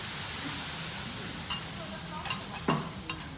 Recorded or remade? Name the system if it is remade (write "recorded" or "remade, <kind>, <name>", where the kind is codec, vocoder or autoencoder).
recorded